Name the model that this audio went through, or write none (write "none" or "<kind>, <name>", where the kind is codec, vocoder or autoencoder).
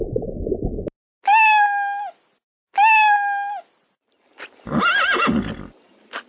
none